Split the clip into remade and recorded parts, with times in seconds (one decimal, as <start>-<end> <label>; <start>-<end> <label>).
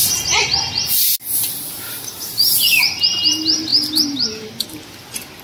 0.0-5.4 recorded